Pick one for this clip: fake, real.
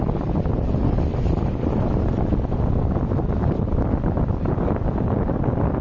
real